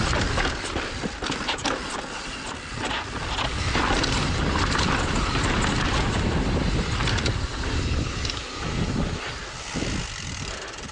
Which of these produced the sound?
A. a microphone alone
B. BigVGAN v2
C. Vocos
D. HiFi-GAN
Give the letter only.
B